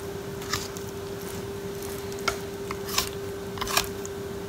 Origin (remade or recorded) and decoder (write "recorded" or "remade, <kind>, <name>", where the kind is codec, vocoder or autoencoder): recorded